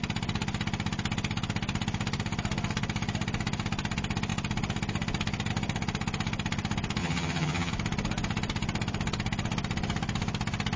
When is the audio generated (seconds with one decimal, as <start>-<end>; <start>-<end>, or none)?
7.0-7.7